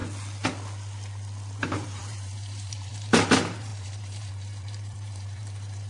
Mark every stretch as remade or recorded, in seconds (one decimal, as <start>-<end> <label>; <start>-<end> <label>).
0.0-1.6 recorded; 1.6-5.9 remade